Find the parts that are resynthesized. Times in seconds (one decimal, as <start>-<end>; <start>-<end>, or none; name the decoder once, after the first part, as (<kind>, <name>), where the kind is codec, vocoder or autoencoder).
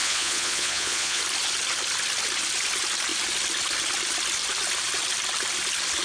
0.0-1.2 (vocoder, Vocos)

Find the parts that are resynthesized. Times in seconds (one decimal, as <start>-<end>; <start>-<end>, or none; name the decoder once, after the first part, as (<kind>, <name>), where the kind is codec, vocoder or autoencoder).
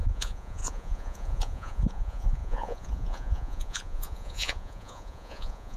0.0-5.8 (vocoder, Vocos)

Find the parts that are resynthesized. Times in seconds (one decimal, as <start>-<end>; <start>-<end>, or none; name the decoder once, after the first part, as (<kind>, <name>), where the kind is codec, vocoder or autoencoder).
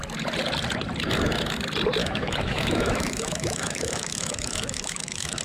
2.0-5.4 (autoencoder, DAC-VAE)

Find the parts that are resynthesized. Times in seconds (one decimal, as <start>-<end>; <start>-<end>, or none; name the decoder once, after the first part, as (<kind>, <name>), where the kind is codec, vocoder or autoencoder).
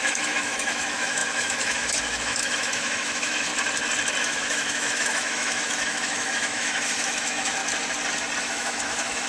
0.0-3.5 (autoencoder, DAC-VAE); 4.2-7.6; 8.4-9.3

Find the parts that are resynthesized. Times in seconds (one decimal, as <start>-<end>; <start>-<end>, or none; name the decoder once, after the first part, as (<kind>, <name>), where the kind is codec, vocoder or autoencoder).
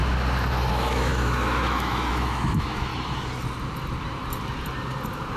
0.7-2.9 (autoencoder, DAC-VAE)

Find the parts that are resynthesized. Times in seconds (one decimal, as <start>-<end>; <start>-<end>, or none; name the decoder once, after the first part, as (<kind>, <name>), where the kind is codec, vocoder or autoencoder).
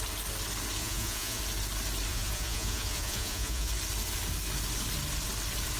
0.8-1.4 (vocoder, Vocos); 2.1-3.7